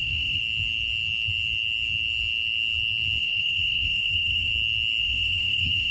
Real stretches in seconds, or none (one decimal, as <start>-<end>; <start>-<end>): 0.4-3.2; 4.5-5.0